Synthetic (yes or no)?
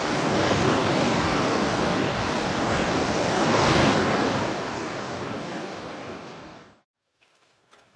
yes